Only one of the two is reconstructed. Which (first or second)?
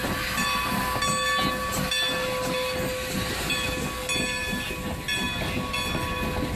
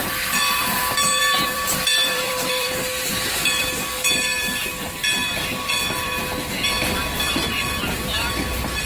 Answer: second